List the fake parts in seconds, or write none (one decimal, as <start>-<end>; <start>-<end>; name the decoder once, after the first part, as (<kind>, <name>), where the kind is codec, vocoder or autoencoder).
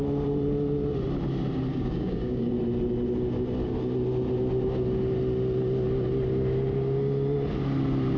1.7-2.5 (codec, DAC)